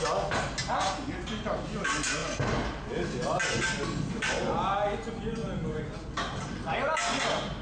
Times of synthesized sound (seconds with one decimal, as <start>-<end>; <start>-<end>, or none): none